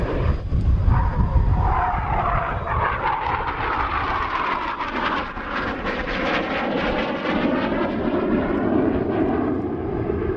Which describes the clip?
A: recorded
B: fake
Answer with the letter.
A